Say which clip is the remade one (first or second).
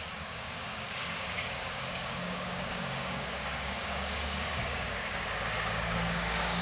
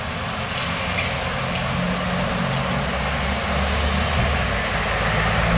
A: first